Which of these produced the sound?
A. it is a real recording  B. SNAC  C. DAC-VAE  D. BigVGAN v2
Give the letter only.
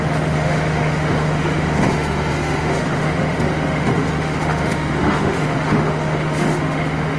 C